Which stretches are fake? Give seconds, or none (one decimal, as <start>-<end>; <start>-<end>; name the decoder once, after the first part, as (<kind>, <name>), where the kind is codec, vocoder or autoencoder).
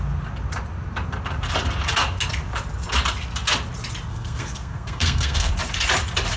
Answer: 4.1-5.5 (codec, SNAC)